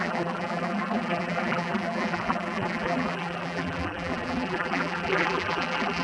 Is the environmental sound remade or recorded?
remade